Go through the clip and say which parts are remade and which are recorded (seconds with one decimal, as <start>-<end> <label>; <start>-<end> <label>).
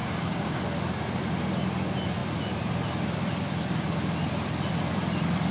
0.0-0.6 remade; 0.6-5.5 recorded